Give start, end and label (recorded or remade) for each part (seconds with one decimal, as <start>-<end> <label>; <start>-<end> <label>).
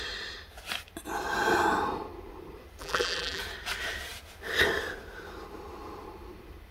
0.0-2.8 recorded; 2.8-3.4 remade; 3.4-6.7 recorded